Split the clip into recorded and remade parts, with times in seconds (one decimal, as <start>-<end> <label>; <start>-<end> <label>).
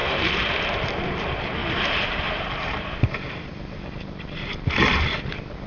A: 0.0-0.9 remade; 0.9-1.6 recorded; 1.6-4.4 remade; 4.4-5.7 recorded